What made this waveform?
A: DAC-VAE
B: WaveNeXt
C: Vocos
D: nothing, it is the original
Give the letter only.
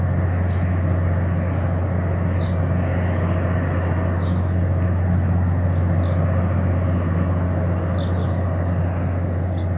D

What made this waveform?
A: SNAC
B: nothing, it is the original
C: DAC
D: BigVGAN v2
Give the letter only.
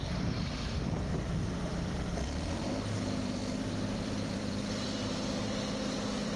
D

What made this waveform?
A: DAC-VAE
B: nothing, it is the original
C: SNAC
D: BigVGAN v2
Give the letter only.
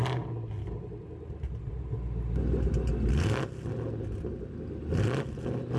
B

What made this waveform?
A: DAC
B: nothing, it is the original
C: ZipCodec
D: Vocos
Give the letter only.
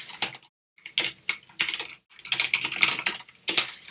B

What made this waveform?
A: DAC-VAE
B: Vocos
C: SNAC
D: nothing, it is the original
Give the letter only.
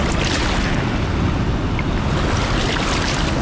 D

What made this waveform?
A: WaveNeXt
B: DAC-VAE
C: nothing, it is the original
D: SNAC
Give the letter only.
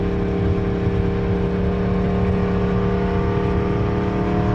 C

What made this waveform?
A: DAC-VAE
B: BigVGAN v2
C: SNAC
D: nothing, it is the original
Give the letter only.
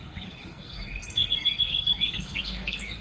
C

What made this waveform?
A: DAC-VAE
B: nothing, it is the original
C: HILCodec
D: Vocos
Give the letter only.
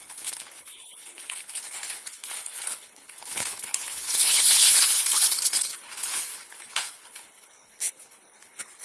C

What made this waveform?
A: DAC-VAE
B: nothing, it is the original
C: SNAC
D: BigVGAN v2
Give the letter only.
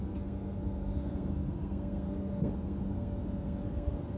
C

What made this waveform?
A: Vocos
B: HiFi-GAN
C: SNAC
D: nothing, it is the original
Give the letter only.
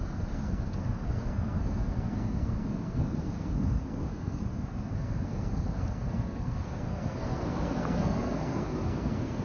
C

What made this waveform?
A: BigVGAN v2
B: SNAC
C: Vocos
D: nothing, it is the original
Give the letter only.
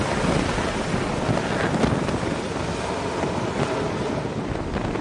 D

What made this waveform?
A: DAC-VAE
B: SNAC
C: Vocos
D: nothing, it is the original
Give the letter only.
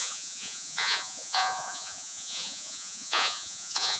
C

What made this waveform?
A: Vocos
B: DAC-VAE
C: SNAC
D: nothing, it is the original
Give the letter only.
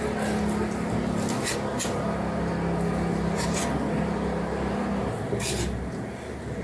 D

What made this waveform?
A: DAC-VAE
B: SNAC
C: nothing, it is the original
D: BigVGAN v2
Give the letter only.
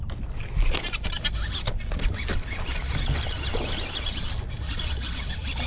C